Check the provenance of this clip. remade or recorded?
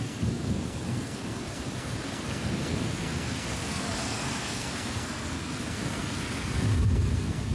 remade